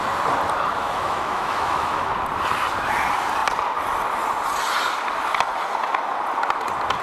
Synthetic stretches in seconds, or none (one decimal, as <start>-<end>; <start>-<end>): 0.8-2.1